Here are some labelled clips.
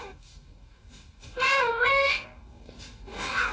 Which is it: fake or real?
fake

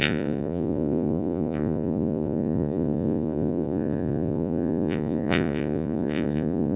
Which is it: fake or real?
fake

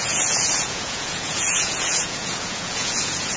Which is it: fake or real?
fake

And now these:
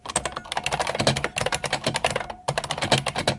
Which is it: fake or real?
real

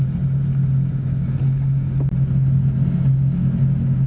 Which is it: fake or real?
real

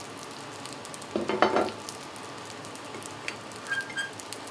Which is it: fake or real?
real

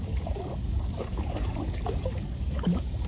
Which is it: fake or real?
fake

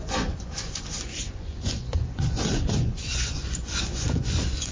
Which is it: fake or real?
fake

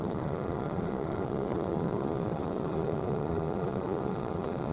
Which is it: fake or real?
fake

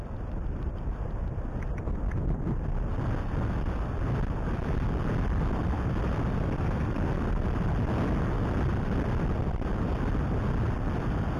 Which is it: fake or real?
real